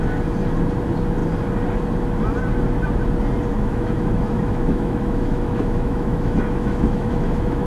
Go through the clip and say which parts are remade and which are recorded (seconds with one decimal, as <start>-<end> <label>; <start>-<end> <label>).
0.0-3.5 recorded; 3.5-7.7 remade